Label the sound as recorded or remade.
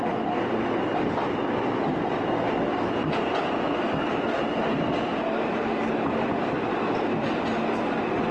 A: recorded